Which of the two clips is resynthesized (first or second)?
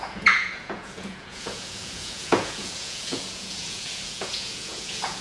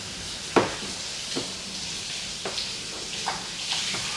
first